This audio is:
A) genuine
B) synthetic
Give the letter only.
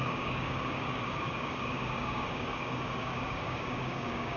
B